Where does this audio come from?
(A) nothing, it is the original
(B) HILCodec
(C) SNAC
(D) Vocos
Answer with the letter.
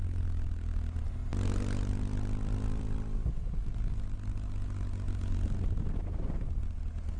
A